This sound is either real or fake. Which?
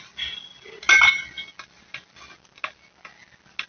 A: real